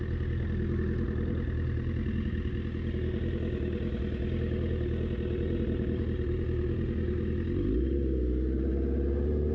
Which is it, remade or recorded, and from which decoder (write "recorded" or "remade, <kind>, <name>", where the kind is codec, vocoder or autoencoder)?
recorded